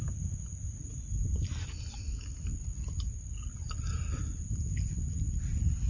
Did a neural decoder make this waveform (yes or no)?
no